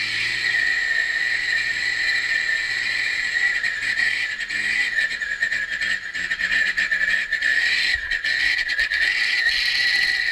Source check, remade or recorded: recorded